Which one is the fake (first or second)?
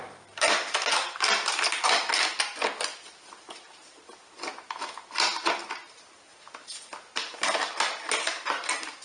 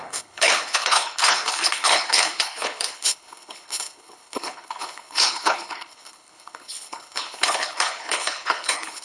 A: second